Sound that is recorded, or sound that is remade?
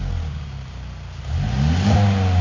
recorded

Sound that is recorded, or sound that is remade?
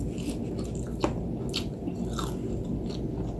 recorded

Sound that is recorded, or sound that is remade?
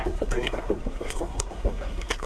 remade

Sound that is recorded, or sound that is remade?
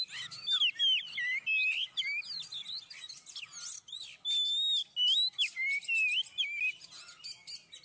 recorded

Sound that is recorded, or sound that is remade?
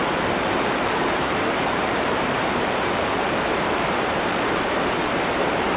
remade